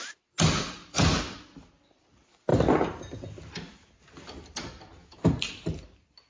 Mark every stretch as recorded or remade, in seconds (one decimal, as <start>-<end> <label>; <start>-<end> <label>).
0.0-6.3 recorded